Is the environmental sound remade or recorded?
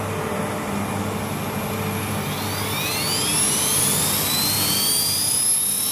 recorded